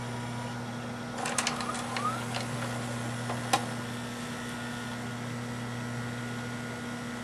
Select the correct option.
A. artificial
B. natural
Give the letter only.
B